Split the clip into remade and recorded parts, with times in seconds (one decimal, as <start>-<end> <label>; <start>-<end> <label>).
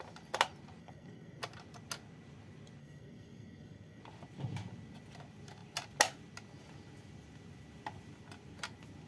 0.0-0.8 recorded; 0.8-1.4 remade; 1.4-2.8 recorded; 2.8-4.0 remade; 4.0-9.1 recorded